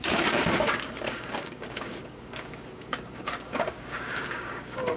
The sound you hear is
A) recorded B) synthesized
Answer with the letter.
B